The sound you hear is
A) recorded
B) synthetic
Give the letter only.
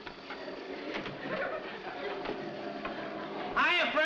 A